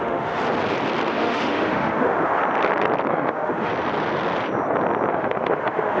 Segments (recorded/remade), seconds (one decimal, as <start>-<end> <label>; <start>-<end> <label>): 0.0-0.4 remade; 0.4-1.1 recorded; 1.1-2.4 remade; 2.4-3.1 recorded; 3.1-3.7 remade; 3.7-5.1 recorded; 5.1-6.0 remade